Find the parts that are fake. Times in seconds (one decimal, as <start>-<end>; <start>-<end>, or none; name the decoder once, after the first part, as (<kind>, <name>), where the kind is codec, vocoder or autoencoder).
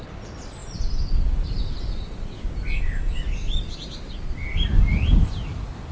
none